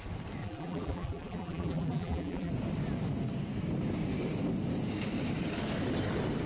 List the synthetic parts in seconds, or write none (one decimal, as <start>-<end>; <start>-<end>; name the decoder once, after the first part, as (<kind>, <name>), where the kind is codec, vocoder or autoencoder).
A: 0.4-2.5 (vocoder, BigVGAN v2)